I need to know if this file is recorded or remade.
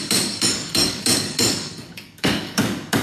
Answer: remade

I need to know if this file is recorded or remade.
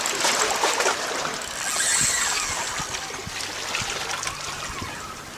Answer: recorded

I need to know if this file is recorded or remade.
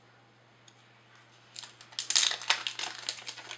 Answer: recorded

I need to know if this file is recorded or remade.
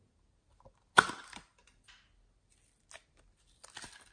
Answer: recorded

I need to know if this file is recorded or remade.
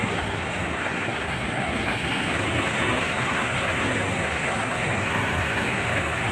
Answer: remade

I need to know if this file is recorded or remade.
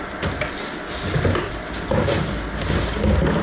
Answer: recorded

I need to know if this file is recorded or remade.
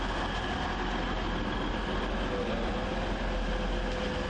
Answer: recorded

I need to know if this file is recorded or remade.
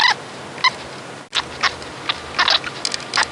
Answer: recorded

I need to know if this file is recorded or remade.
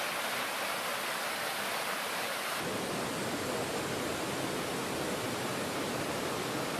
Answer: recorded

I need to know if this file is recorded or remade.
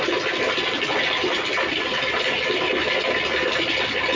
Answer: recorded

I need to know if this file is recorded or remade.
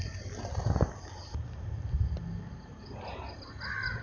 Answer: recorded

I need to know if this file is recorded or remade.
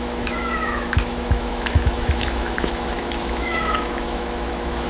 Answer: remade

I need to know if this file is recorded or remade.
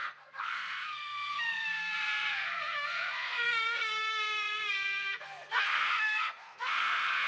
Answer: remade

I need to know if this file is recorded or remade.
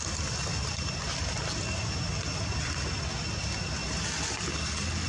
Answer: recorded